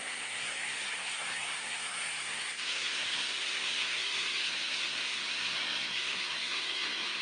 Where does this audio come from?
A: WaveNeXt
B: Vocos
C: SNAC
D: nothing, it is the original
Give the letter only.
C